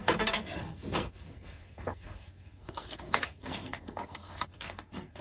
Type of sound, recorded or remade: remade